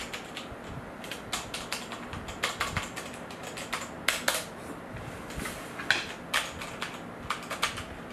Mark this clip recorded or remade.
recorded